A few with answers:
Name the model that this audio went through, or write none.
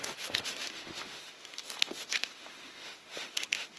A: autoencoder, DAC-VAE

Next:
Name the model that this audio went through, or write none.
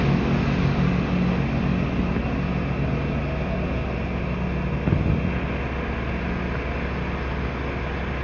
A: none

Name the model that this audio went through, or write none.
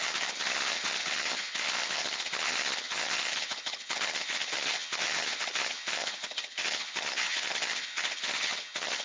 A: vocoder, HiFi-GAN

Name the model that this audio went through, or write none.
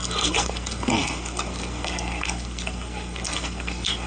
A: codec, SNAC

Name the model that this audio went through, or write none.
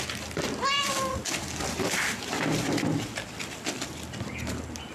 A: none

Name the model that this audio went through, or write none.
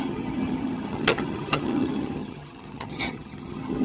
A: vocoder, HiFi-GAN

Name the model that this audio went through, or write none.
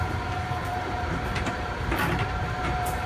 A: vocoder, BigVGAN v2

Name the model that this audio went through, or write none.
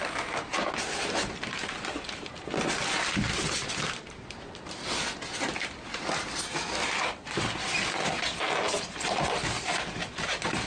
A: none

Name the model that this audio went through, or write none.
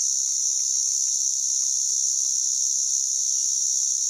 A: none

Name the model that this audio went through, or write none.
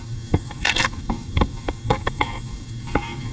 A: codec, SNAC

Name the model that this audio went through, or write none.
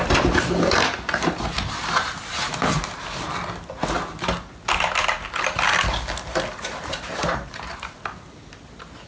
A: none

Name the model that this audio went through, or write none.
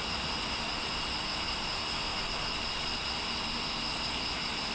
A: none